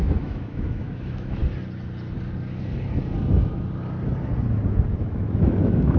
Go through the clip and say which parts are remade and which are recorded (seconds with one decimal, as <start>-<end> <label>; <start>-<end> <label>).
0.0-1.4 remade; 1.4-5.0 recorded; 5.0-6.0 remade